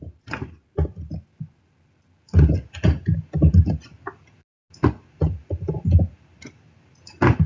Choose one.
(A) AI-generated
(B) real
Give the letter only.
B